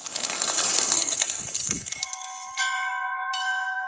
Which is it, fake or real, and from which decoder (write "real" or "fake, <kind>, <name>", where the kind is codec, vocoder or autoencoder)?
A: fake, codec, SNAC